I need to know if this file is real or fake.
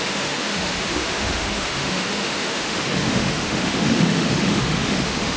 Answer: fake